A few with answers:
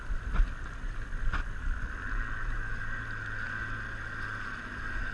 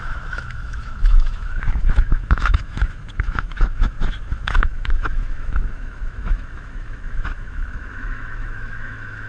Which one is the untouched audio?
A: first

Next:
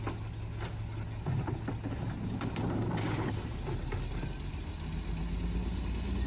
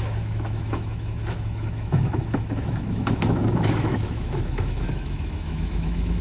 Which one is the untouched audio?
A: first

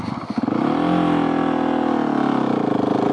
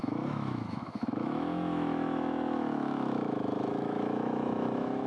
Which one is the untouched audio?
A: first